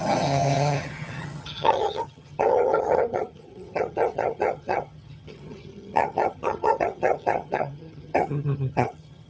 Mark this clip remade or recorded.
remade